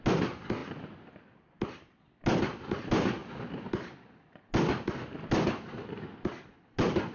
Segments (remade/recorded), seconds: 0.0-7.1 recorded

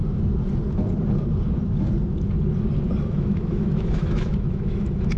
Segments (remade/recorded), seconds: 0.0-3.1 recorded; 3.1-5.2 remade

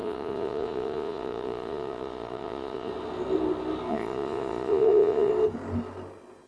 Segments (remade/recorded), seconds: 0.0-2.9 remade; 2.9-3.9 recorded; 3.9-5.3 remade; 5.3-6.5 recorded

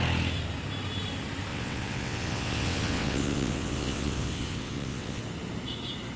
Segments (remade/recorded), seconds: 0.0-1.5 recorded; 1.5-5.2 remade; 5.2-6.2 recorded

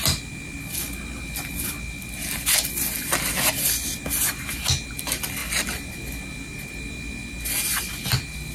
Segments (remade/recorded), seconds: 0.0-8.5 recorded